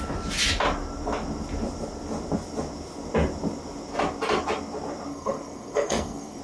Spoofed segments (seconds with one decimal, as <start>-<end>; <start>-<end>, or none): 5.1-6.4